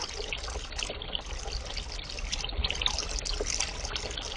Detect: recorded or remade recorded